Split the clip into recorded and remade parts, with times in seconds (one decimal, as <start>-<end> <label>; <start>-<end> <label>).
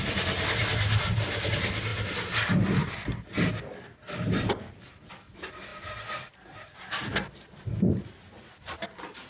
0.0-9.3 recorded